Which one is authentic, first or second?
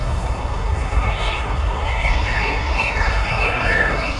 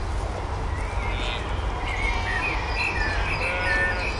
second